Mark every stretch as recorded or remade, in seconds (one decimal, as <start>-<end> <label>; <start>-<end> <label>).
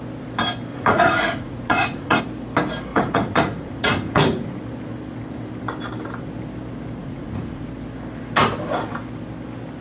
0.0-0.7 recorded; 0.7-2.2 remade; 2.2-2.9 recorded; 2.9-4.6 remade; 4.6-7.0 recorded; 7.0-7.6 remade; 7.6-9.8 recorded